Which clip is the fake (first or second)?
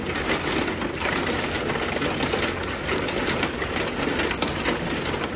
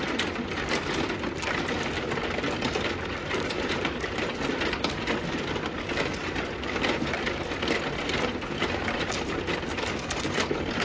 second